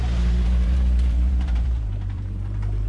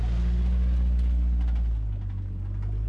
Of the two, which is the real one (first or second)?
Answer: second